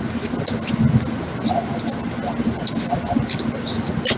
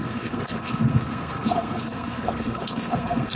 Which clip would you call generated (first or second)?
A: second